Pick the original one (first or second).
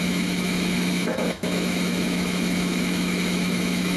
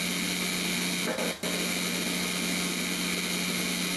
second